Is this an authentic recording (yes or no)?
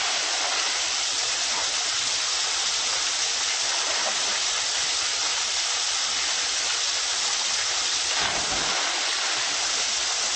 no